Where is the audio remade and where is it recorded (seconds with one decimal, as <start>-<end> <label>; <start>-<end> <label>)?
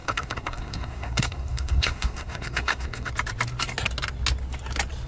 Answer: 0.0-3.1 remade; 3.1-5.1 recorded